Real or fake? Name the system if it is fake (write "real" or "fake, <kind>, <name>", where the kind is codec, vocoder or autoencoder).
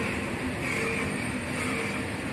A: real